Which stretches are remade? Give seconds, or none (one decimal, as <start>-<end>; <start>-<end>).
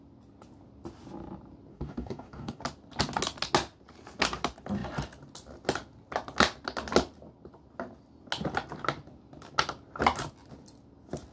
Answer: 1.7-2.6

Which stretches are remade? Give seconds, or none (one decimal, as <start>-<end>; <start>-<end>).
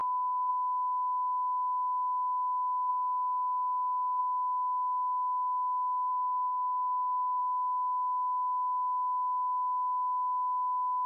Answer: 0.0-0.5; 6.1-7.4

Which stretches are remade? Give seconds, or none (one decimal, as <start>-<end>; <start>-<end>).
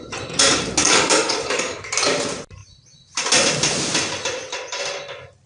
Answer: 0.8-1.9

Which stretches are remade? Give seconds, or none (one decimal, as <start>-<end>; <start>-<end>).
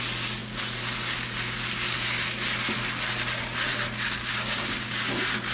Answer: 4.2-5.1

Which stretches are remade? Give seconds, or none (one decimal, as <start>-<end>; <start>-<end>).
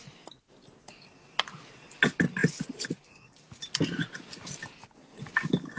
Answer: none